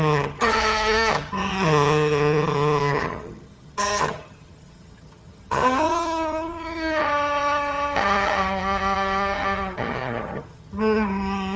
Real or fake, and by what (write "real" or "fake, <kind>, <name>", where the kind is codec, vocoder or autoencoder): fake, vocoder, HiFi-GAN